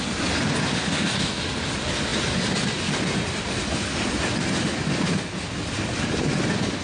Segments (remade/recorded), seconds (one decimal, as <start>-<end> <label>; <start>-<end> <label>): 0.0-0.8 recorded; 0.8-1.4 remade; 1.4-6.8 recorded